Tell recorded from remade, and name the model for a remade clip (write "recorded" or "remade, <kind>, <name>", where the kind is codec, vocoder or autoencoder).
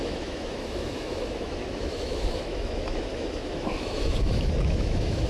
remade, autoencoder, DAC-VAE